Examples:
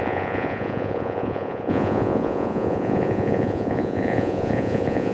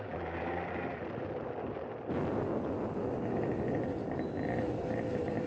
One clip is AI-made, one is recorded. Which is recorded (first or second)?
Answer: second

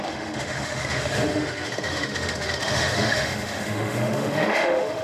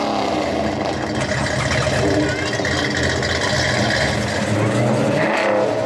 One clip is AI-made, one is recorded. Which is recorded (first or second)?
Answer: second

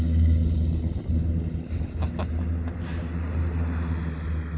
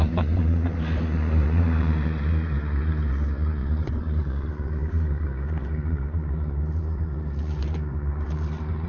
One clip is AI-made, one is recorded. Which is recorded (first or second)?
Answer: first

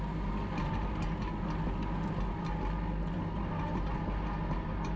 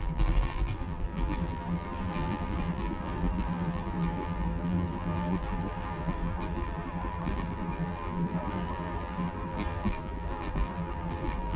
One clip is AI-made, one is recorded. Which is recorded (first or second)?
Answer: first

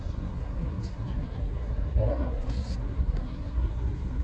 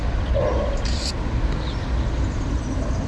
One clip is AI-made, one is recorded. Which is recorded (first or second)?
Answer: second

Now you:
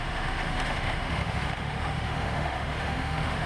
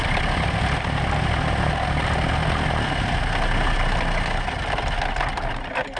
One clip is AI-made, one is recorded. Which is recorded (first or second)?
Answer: second